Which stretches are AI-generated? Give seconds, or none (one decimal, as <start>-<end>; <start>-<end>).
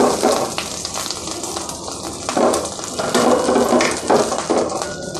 1.2-2.9